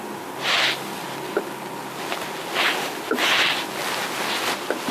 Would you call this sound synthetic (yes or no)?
no